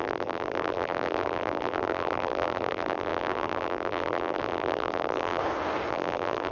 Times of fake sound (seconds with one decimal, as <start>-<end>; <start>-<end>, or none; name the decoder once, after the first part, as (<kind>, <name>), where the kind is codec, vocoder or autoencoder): 0.0-5.4 (vocoder, BigVGAN v2); 5.9-6.5